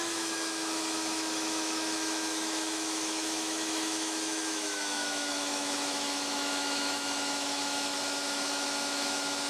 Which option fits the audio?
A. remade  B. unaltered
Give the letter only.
A